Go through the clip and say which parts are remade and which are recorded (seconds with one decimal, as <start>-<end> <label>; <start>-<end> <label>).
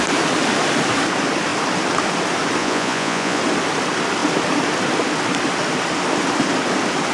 0.0-2.6 recorded; 2.6-3.4 remade; 3.4-7.1 recorded